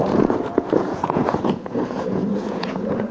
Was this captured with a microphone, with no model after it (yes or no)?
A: no